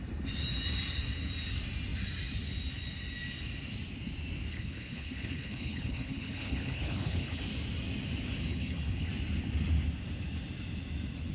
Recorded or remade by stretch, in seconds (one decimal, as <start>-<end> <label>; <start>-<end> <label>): 0.0-4.5 recorded; 4.5-7.4 remade; 7.4-8.5 recorded; 8.5-9.1 remade; 9.1-11.3 recorded